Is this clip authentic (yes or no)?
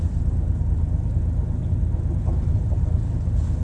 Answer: yes